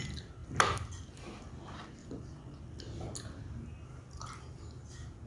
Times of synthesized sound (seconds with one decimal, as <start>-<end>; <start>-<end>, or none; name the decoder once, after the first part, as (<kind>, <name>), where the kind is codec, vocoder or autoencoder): 2.0-2.6 (vocoder, Vocos)